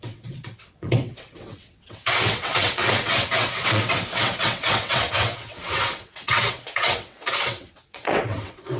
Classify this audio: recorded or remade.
remade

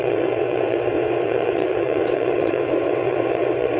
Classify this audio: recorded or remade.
remade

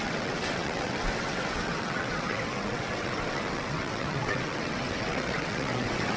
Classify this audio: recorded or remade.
remade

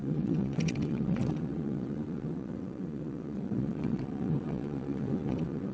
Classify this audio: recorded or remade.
remade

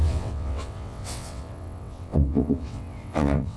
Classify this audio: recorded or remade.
remade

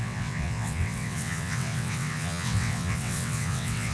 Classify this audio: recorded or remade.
remade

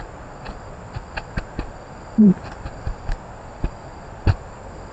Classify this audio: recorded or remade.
recorded